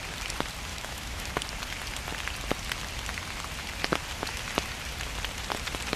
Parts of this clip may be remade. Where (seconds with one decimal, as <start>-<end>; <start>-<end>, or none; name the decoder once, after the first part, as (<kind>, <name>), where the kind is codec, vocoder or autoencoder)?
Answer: 0.7-1.3 (autoencoder, DAC-VAE)